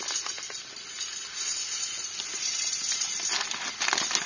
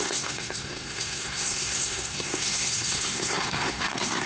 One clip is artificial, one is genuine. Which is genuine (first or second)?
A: first